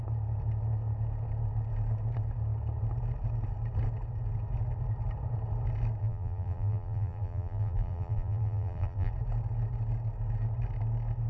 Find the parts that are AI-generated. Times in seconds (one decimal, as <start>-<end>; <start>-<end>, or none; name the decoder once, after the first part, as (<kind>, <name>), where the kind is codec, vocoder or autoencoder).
6.0-9.1 (vocoder, BigVGAN v2)